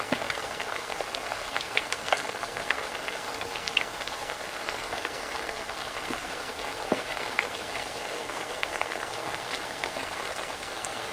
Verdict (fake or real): fake